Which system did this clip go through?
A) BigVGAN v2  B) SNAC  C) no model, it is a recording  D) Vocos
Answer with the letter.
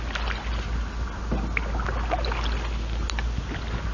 C